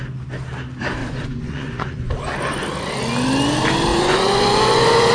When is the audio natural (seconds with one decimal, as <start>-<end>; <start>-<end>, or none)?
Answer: 0.0-1.0; 2.1-3.9

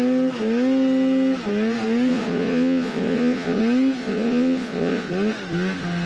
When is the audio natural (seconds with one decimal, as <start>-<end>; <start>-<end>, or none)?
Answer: 0.0-2.1; 3.6-4.0; 5.1-6.1

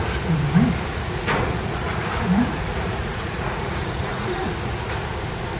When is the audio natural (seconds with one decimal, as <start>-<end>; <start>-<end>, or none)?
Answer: 0.0-0.9; 4.3-5.6

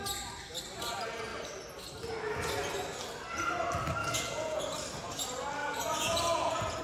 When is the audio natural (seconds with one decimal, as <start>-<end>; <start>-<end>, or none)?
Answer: 0.0-4.0; 4.6-5.6

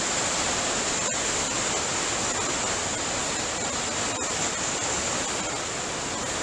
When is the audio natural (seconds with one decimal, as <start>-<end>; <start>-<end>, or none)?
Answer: 0.0-6.4

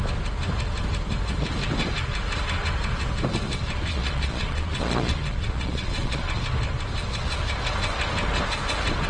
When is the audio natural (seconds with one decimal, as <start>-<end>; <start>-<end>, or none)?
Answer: 0.0-3.9; 6.4-9.1

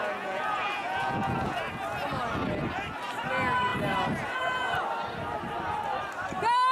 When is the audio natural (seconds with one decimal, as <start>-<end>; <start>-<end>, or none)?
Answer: 1.6-6.7